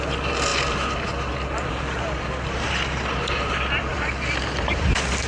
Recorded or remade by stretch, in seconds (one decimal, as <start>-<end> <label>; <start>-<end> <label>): 0.0-5.3 remade